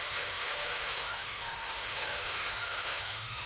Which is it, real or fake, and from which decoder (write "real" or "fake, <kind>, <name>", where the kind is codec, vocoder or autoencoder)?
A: fake, autoencoder, DAC-VAE